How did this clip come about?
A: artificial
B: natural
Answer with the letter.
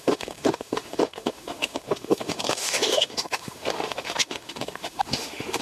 A